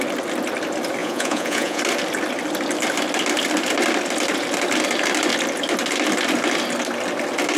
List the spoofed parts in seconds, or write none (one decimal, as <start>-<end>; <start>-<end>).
1.0-1.8